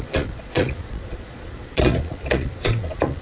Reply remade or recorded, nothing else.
remade